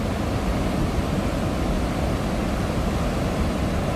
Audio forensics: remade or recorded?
recorded